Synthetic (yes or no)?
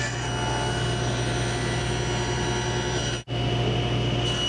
no